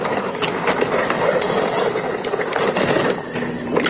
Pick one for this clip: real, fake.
real